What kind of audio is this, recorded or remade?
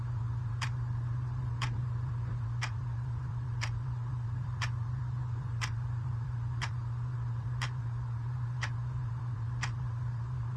remade